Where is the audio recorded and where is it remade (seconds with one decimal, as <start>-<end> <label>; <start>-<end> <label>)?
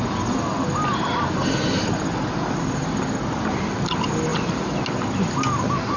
0.0-6.0 recorded